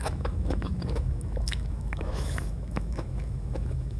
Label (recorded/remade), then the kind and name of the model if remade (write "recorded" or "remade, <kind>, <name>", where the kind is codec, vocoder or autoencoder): remade, autoencoder, DAC-VAE